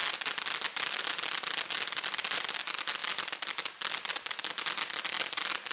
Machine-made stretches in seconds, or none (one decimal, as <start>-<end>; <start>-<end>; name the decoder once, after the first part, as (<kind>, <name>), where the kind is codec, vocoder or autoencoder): none